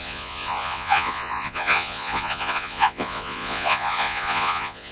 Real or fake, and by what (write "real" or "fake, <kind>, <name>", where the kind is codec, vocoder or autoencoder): fake, vocoder, Vocos